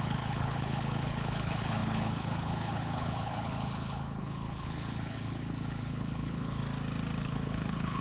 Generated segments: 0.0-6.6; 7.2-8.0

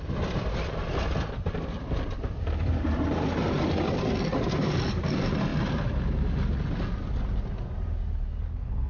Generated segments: none

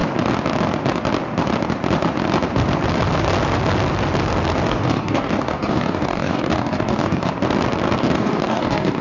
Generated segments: 4.7-7.3; 8.0-9.0